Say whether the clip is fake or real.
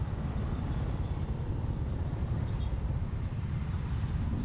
real